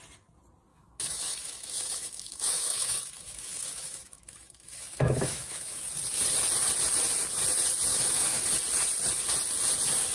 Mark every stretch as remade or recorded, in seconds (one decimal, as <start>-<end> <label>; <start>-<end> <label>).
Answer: 0.0-0.7 recorded; 0.7-5.8 remade; 5.8-7.9 recorded; 7.9-8.4 remade; 8.4-10.1 recorded

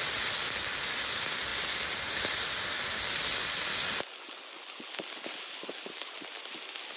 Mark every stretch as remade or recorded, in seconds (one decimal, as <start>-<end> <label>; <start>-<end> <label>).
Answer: 0.0-7.0 recorded

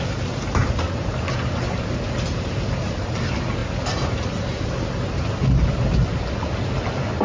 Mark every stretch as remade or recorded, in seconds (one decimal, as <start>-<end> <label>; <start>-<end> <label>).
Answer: 0.0-7.2 recorded

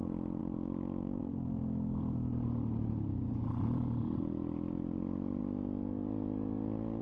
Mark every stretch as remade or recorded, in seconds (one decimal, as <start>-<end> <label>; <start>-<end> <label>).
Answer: 0.0-7.0 recorded

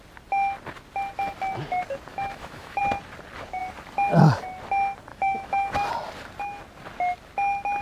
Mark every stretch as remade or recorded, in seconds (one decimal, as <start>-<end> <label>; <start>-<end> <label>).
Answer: 0.0-2.1 recorded; 2.1-2.8 remade; 2.8-5.1 recorded; 5.1-5.9 remade; 5.9-7.8 recorded